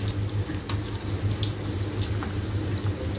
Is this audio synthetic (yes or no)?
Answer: no